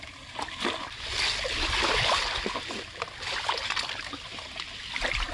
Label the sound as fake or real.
real